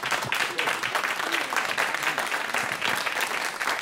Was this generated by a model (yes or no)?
no